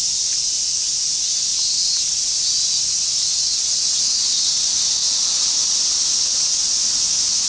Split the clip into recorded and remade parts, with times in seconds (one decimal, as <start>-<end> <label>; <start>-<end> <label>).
0.0-7.5 recorded